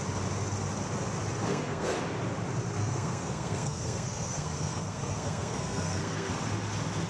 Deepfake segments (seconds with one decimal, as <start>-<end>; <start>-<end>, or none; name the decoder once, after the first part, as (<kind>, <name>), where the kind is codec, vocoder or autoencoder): 1.5-2.0 (codec, SNAC); 2.8-6.3